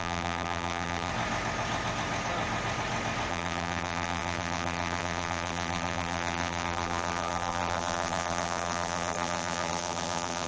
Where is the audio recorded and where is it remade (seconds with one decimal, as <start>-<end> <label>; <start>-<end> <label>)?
0.0-1.1 remade; 1.1-3.3 recorded; 3.3-10.5 remade